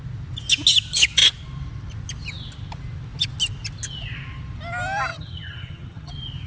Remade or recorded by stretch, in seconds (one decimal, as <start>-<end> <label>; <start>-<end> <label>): 0.0-5.1 recorded; 5.1-6.1 remade; 6.1-6.5 recorded